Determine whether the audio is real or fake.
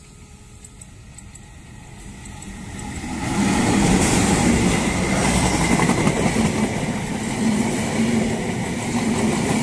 real